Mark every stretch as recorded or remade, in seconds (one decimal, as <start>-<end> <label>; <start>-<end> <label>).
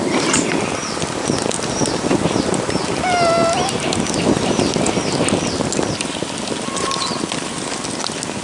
0.0-8.4 recorded